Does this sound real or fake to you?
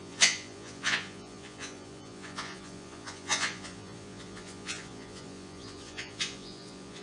fake